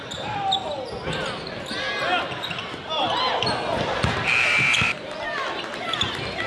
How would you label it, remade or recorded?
recorded